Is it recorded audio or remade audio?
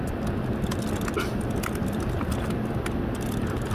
recorded